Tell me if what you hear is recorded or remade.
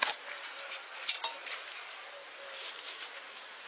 recorded